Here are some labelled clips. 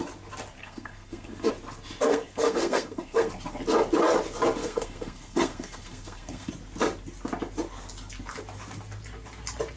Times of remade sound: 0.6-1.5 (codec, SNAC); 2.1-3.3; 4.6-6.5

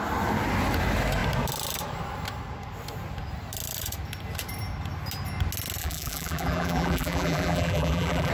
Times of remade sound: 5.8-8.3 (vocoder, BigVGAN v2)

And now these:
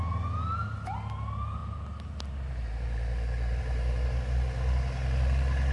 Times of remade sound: none